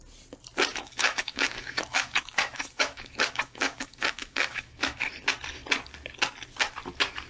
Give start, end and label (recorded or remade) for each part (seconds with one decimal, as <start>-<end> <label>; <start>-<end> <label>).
0.0-0.7 recorded; 0.7-5.1 remade; 5.1-7.3 recorded